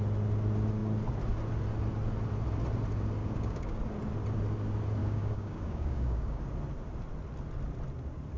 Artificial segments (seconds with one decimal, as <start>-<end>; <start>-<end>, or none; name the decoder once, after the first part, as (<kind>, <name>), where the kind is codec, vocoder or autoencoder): 3.2-3.8 (codec, DAC); 5.0-6.4